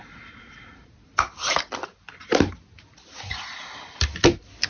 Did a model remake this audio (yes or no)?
no